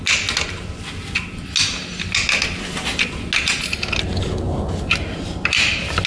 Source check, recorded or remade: recorded